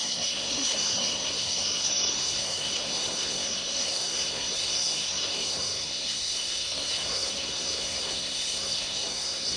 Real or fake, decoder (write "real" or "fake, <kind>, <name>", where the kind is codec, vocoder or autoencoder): fake, codec, SNAC